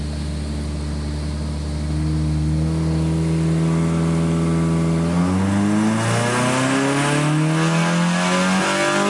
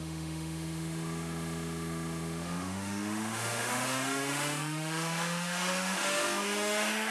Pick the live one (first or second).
first